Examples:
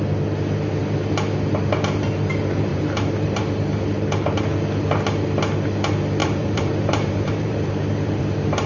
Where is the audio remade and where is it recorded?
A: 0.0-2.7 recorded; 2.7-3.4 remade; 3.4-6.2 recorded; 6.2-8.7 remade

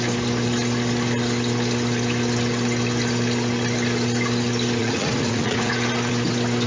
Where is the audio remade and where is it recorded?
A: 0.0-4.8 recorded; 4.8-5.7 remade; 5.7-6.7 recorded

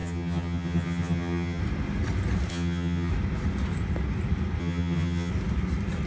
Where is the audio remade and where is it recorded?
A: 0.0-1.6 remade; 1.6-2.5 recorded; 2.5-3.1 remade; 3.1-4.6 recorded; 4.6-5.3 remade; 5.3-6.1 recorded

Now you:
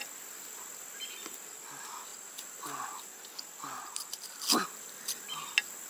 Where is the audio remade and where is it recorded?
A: 0.0-5.9 recorded

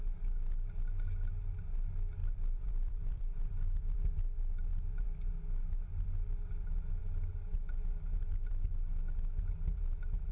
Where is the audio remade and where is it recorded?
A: 0.0-2.2 recorded; 2.2-4.1 remade; 4.1-4.7 recorded; 4.7-5.3 remade; 5.3-10.3 recorded